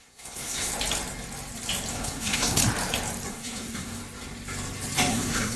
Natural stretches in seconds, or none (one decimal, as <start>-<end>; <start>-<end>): 0.7-1.9; 2.6-3.3; 4.0-5.1